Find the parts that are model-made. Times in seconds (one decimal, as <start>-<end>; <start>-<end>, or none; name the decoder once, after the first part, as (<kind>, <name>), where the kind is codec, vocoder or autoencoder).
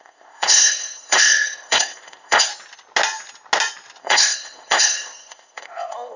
0.0-2.5 (codec, ZipCodec); 4.0-6.2